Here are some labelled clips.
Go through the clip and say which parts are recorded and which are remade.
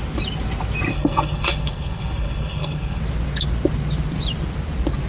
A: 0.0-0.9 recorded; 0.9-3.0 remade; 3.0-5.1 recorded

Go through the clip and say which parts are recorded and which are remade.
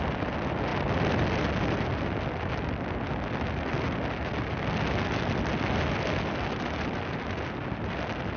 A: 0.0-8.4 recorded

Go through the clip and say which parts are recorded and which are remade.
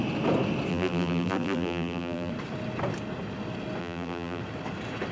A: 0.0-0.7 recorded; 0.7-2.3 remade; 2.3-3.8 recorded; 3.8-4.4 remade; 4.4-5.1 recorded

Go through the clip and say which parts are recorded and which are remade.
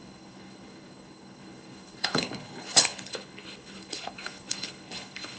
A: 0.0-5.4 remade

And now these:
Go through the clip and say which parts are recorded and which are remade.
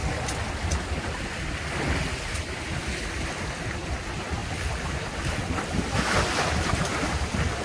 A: 0.0-7.6 recorded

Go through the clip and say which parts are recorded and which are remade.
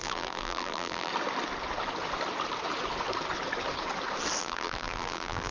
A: 0.0-1.1 remade; 1.1-4.4 recorded; 4.4-5.5 remade